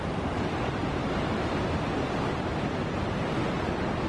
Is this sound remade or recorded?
recorded